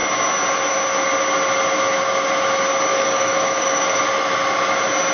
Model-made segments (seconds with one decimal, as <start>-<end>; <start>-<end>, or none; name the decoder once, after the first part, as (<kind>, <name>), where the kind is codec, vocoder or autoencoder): 2.9-4.0 (codec, DAC)